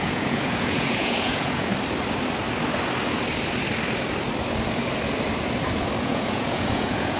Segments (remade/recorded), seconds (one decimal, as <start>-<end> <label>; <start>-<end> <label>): 0.0-1.7 remade; 1.7-6.0 recorded; 6.0-7.2 remade